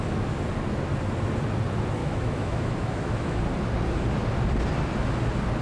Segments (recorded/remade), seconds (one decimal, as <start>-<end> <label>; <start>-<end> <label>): 0.0-2.0 recorded; 2.0-3.4 remade; 3.4-5.6 recorded